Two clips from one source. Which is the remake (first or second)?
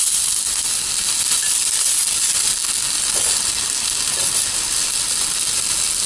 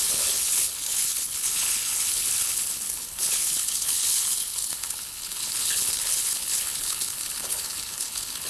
second